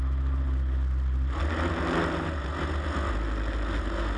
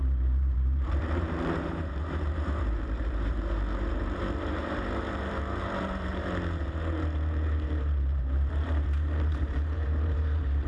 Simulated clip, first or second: second